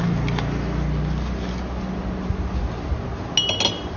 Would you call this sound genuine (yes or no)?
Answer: yes